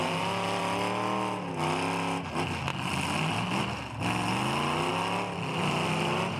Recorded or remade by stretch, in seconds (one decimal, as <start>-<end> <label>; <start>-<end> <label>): 0.0-6.4 recorded